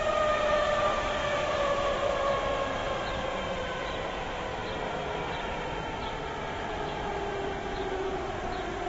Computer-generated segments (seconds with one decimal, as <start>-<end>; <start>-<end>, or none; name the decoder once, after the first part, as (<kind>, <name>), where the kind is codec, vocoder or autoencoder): 1.2-2.3 (vocoder, BigVGAN v2); 4.6-7.3